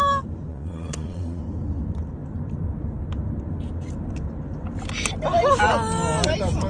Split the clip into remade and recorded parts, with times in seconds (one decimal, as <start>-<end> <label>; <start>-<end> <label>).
0.0-0.5 recorded; 0.5-1.4 remade; 1.4-6.7 recorded

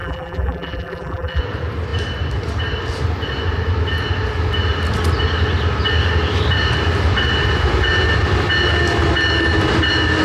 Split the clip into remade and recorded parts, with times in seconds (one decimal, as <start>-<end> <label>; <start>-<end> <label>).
0.0-1.4 remade; 1.4-10.2 recorded

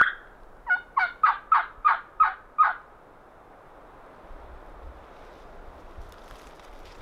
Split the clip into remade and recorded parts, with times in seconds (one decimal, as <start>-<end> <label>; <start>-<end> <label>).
0.0-7.0 recorded

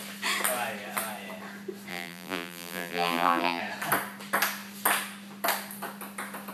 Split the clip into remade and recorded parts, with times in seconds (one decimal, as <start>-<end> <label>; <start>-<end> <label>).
0.0-1.9 recorded; 1.9-3.6 remade; 3.6-6.5 recorded

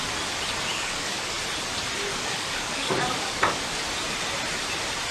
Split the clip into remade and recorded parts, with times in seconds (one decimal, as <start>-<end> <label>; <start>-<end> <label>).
0.0-0.7 recorded; 0.7-1.4 remade; 1.4-2.1 recorded; 2.1-3.8 remade; 3.8-5.1 recorded

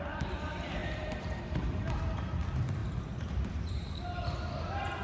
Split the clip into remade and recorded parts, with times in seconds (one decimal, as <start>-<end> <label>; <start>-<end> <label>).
0.0-0.8 recorded; 0.8-2.2 remade; 2.2-2.8 recorded; 2.8-3.7 remade; 3.7-5.0 recorded